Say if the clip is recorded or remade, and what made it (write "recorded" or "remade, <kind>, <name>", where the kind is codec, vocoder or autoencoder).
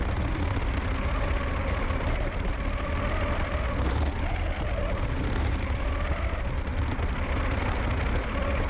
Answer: recorded